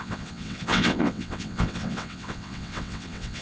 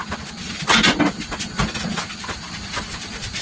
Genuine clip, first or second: second